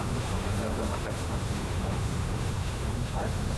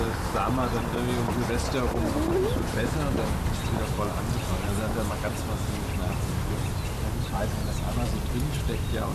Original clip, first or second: second